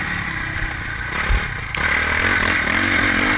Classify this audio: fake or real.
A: real